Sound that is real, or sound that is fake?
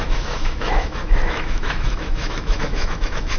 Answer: fake